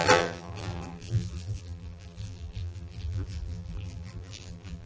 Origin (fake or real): fake